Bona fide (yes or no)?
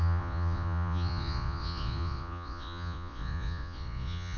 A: no